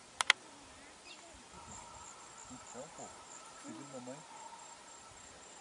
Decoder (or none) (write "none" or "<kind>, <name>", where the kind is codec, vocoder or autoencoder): none